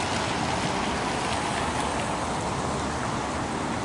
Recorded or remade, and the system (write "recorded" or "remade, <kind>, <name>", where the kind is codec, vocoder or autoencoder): recorded